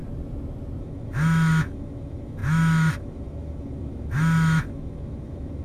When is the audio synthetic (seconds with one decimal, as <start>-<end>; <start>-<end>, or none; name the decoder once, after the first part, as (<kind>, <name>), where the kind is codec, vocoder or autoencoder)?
0.8-5.6 (autoencoder, DAC-VAE)